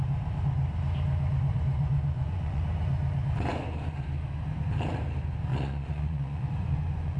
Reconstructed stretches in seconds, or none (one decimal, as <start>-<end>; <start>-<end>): 1.5-2.6; 5.5-7.2